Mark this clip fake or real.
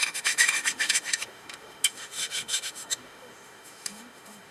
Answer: fake